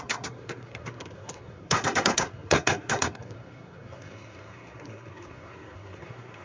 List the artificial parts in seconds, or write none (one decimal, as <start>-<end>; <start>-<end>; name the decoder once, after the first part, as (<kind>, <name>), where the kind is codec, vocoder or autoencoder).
0.0-6.4 (codec, SNAC)